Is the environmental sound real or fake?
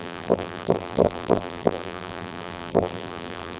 fake